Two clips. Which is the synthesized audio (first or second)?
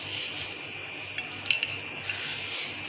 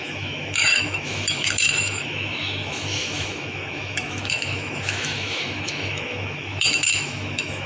second